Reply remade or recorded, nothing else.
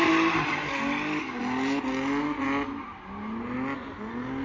recorded